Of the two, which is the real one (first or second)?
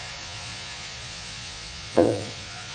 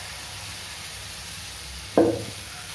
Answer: second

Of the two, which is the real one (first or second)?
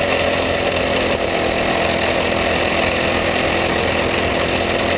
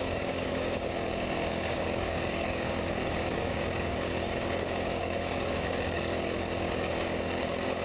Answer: first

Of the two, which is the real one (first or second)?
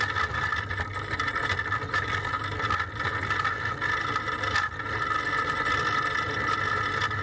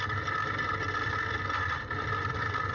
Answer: first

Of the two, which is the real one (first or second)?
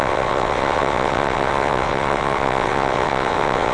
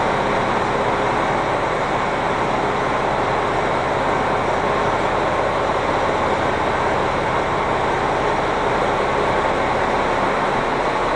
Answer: second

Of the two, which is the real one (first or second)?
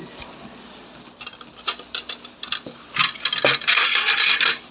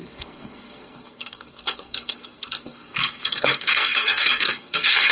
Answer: first